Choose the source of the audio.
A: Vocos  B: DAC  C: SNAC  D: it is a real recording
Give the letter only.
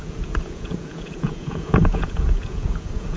A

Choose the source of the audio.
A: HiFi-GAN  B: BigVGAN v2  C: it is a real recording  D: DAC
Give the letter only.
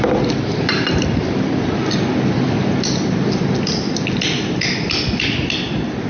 C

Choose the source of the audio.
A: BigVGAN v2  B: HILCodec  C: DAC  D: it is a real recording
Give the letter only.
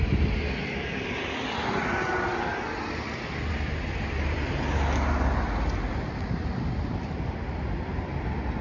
D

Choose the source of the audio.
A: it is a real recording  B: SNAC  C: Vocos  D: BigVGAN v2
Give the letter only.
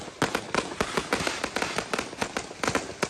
A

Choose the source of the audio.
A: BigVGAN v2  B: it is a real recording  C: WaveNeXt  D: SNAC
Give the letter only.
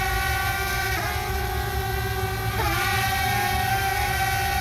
B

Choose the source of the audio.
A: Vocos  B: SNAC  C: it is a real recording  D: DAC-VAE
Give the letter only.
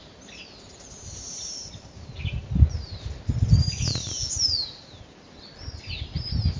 C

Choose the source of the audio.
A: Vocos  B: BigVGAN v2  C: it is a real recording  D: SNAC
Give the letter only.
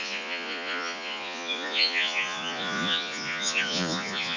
A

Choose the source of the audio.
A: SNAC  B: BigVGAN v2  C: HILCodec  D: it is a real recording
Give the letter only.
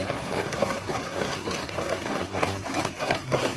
A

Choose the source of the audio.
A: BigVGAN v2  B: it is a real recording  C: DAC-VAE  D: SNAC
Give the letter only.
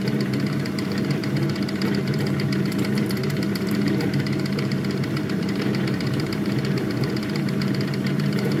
A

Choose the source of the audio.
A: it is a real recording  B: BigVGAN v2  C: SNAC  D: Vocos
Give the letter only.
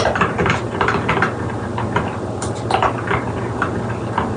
A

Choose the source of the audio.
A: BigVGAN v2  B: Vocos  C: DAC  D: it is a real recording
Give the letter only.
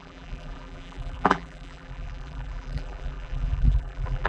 A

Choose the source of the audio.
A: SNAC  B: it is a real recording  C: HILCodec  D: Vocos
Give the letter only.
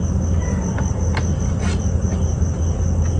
B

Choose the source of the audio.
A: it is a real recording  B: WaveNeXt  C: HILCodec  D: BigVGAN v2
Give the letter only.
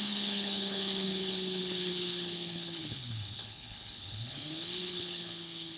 C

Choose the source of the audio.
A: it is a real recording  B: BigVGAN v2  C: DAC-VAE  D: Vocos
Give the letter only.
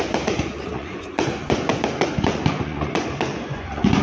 D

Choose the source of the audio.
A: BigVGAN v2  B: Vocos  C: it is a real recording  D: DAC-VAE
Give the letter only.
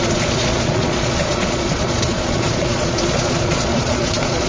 B